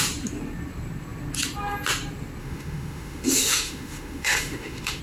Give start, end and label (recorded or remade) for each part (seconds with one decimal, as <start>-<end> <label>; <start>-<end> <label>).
0.0-2.4 recorded; 2.4-5.0 remade